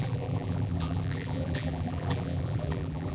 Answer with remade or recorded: remade